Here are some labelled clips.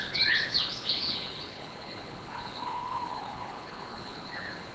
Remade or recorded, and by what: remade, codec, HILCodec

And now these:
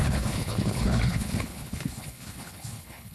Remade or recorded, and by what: remade, codec, HILCodec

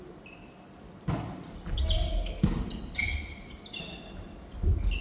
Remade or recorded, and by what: recorded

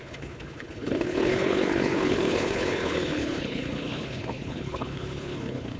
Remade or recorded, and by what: remade, codec, HILCodec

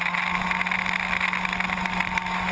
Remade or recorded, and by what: recorded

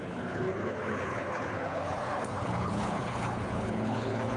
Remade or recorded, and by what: remade, codec, HILCodec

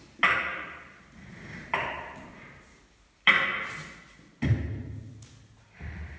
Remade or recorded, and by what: recorded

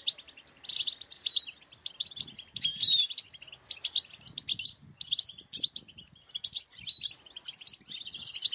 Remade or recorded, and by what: recorded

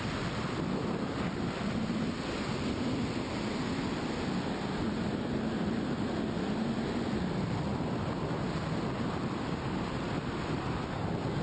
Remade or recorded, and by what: recorded